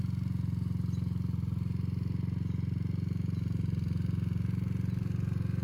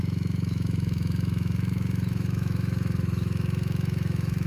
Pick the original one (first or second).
first